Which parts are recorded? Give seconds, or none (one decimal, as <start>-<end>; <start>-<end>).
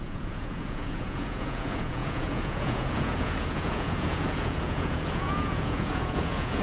none